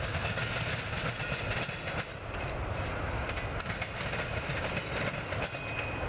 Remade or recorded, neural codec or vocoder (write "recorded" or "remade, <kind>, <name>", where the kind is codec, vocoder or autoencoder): recorded